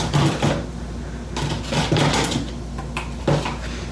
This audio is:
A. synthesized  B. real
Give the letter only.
B